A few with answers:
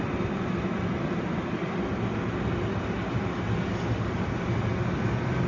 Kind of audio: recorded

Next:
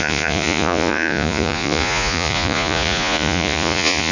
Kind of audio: remade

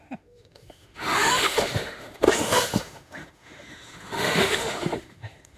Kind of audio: remade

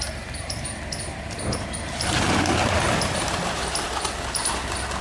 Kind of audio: recorded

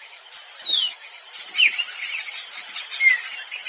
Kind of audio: recorded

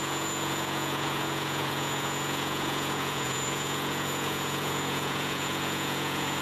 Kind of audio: remade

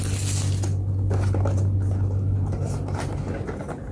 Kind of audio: recorded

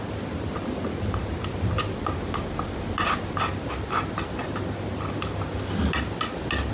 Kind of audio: recorded